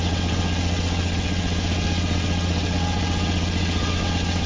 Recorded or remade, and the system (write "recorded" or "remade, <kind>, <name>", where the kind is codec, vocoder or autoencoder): remade, vocoder, WaveNeXt